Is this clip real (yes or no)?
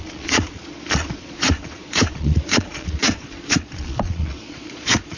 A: no